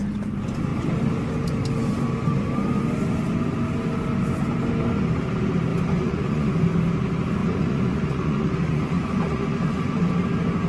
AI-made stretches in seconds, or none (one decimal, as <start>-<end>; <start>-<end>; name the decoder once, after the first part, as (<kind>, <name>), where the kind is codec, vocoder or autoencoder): 5.7-6.7 (vocoder, Vocos); 7.4-10.1